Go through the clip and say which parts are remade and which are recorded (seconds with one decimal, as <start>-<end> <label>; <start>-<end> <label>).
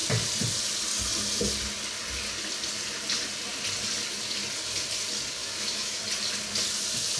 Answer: 0.0-5.4 recorded; 5.4-6.0 remade; 6.0-7.2 recorded